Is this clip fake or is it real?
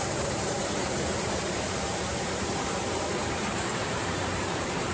fake